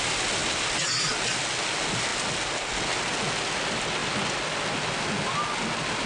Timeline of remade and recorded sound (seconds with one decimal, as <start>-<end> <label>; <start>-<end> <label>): 0.0-6.1 recorded

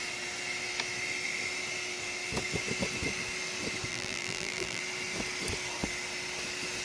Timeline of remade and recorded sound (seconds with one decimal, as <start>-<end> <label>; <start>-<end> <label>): 0.0-3.9 recorded; 3.9-4.8 remade; 4.8-6.8 recorded

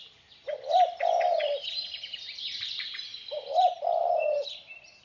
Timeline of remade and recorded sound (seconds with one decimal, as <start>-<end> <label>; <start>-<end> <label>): 0.0-1.6 recorded; 1.6-3.1 remade; 3.1-3.8 recorded; 3.8-5.0 remade

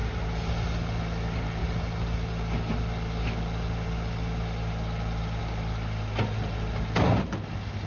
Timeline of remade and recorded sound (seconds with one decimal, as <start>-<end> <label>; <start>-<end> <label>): 0.0-7.9 recorded

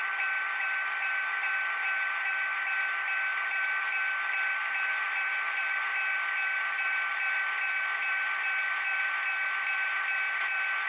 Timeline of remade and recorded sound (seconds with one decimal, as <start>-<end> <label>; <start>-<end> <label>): 0.0-10.9 recorded

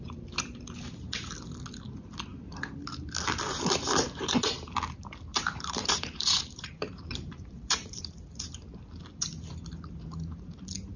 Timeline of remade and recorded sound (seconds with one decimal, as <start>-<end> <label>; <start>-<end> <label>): 0.0-5.3 recorded; 5.3-8.1 remade; 8.1-11.0 recorded

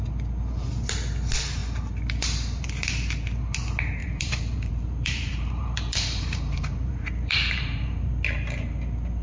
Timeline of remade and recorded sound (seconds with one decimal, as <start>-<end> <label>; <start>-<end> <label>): 0.0-4.0 recorded; 4.0-8.1 remade; 8.1-9.2 recorded

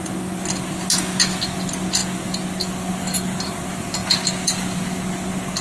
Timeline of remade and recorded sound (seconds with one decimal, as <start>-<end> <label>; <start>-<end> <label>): 0.0-5.6 recorded